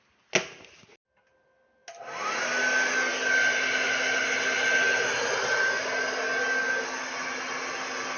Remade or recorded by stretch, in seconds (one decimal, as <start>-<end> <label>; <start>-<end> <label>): 0.0-8.2 recorded